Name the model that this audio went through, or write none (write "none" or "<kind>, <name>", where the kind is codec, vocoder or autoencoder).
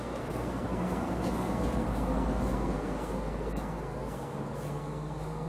codec, SNAC